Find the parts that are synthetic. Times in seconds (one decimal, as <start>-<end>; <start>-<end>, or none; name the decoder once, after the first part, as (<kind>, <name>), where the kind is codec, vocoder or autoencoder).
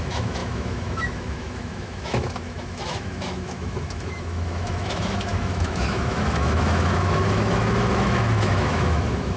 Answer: 0.0-9.4 (autoencoder, DAC-VAE)